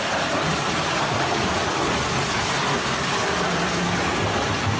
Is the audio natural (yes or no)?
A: yes